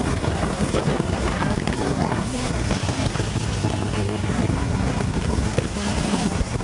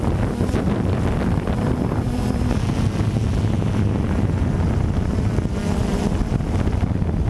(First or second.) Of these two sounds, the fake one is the first